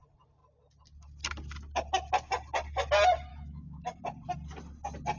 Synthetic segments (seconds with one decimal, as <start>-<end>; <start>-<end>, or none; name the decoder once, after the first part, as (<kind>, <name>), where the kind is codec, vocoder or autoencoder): 3.3-4.0 (autoencoder, DAC-VAE)